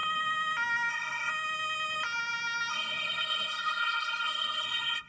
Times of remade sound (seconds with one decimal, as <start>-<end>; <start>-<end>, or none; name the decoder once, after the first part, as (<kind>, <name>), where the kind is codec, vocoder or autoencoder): 0.9-1.3 (codec, SNAC); 2.7-5.1